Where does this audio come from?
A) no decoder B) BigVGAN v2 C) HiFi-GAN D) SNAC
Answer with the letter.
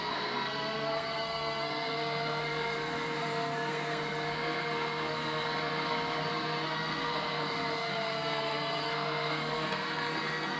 D